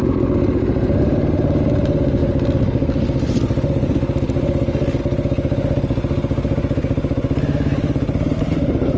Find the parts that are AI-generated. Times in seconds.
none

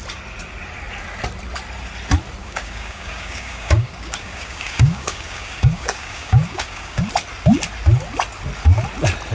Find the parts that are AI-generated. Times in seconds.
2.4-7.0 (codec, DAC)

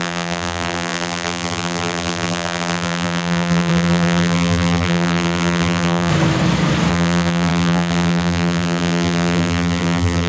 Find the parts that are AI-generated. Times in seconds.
0.0-6.1 (vocoder, BigVGAN v2); 6.9-10.3

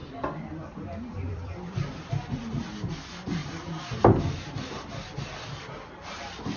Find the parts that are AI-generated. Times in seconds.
0.0-2.1 (vocoder, BigVGAN v2)